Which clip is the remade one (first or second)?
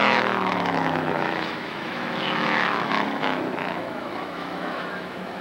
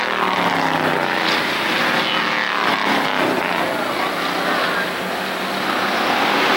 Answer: first